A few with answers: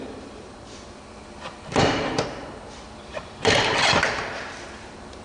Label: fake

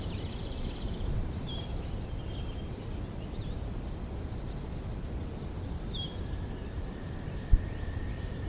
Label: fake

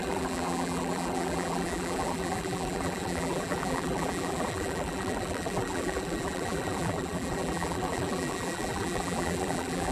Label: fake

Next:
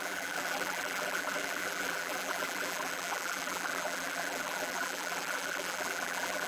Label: fake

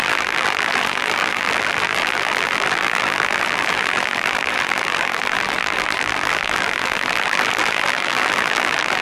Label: fake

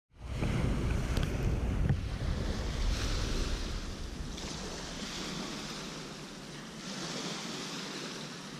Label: real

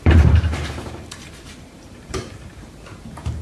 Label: fake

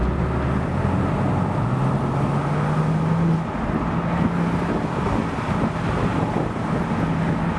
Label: real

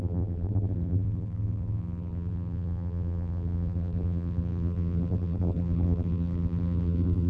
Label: fake